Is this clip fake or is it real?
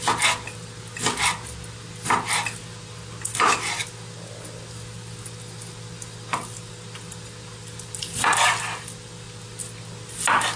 real